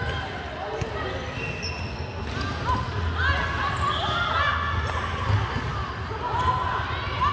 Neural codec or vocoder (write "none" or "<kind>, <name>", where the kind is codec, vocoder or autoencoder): none